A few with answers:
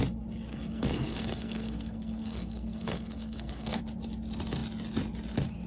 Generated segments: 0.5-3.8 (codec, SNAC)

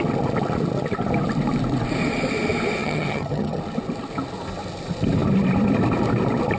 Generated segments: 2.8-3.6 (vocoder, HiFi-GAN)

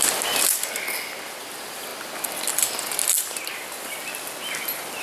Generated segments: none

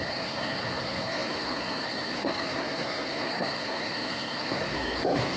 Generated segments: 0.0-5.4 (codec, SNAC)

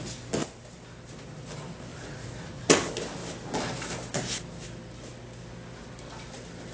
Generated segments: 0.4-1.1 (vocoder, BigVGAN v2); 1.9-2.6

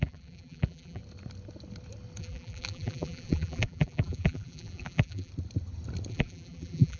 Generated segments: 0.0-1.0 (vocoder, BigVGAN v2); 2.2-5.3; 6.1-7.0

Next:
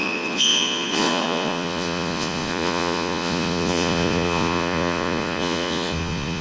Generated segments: 0.0-6.4 (vocoder, Vocos)